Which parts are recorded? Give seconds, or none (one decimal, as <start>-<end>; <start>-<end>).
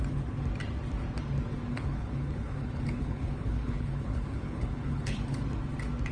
0.0-1.7; 5.4-6.1